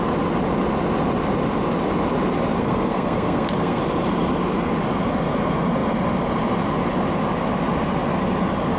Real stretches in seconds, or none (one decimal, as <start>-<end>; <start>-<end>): 0.0-2.6; 3.8-8.8